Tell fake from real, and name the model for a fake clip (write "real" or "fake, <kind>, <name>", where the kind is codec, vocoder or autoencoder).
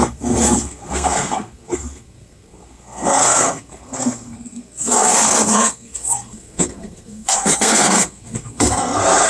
fake, codec, SNAC